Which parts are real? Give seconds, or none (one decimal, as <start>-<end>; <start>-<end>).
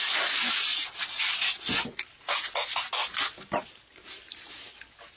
0.0-0.7; 1.7-3.0; 4.4-5.2